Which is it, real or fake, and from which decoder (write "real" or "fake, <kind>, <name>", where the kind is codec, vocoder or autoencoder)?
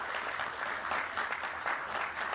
real